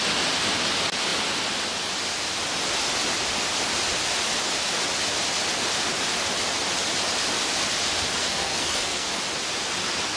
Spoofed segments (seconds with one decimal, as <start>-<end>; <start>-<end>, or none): 8.2-9.2